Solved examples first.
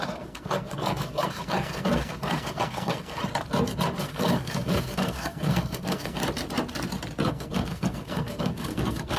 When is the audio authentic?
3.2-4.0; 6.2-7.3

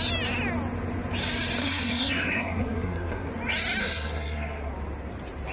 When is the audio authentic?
0.0-1.6; 3.3-3.8; 4.7-5.5

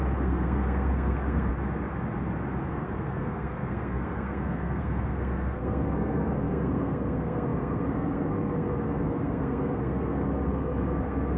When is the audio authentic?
1.5-2.7

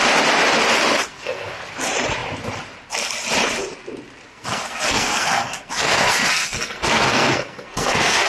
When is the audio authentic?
0.0-1.1; 1.6-4.3

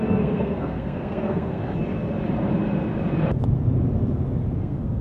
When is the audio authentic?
1.6-4.6

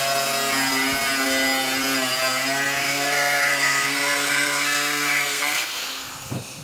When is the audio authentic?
0.0-2.8; 5.8-6.6

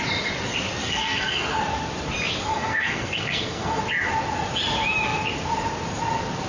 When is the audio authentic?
0.0-0.8; 1.5-2.5; 3.8-6.5